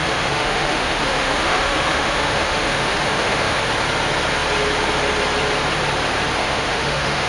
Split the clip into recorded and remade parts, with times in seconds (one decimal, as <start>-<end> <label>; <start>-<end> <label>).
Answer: 0.0-3.7 remade; 3.7-6.4 recorded; 6.4-7.3 remade